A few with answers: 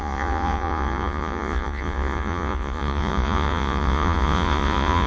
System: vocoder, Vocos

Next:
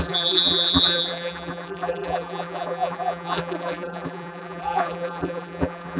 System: vocoder, BigVGAN v2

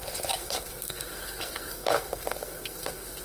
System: codec, SNAC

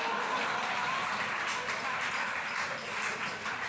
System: none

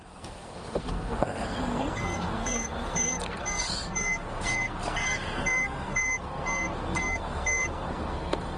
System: codec, SNAC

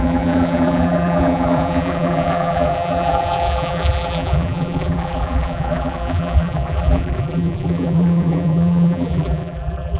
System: vocoder, BigVGAN v2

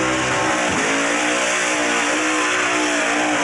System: none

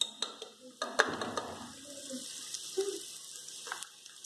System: none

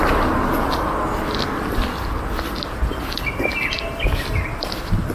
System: none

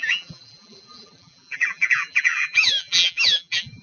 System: vocoder, BigVGAN v2